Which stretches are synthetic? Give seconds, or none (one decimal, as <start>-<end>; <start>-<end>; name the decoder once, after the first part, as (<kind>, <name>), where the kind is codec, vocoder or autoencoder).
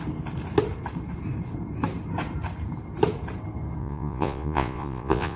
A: 3.8-5.4 (vocoder, Vocos)